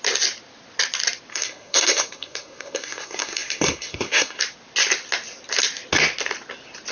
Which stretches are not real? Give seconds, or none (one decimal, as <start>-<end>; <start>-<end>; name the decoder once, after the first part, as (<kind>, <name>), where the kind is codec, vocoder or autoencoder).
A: 1.3-4.4 (codec, SNAC)